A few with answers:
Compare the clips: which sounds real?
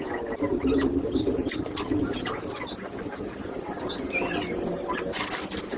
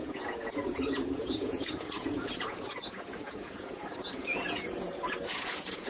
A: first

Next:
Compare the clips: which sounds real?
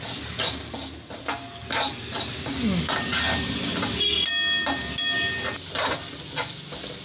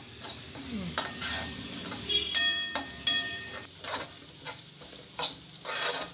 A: first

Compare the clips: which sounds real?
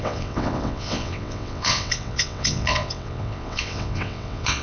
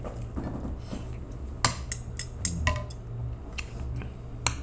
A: second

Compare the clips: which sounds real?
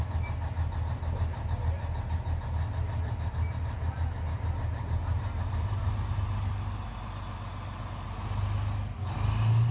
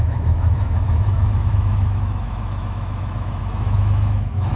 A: first